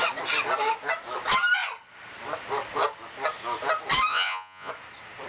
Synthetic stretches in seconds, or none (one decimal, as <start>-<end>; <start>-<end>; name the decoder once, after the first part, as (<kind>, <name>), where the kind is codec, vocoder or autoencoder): 4.1-4.7 (vocoder, Vocos)

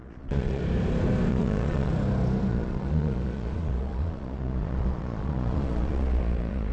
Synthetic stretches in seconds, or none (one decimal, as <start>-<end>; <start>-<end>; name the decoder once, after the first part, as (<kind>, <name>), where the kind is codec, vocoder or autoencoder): 0.0-0.6 (vocoder, Vocos); 1.3-1.9; 2.5-6.7

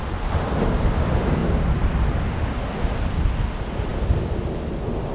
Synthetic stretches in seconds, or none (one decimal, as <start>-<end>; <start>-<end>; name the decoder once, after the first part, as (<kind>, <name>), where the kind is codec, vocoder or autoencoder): none